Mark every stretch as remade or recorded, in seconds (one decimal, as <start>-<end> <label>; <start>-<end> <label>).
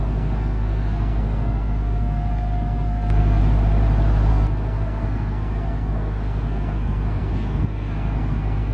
0.0-3.4 remade; 3.4-4.3 recorded; 4.3-8.7 remade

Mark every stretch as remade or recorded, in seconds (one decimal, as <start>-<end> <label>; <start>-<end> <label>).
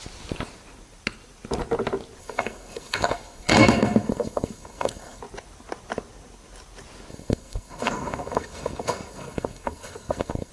0.0-2.2 recorded; 2.2-5.2 remade; 5.2-7.1 recorded; 7.1-10.5 remade